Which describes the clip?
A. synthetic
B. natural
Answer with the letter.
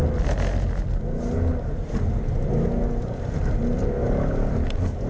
B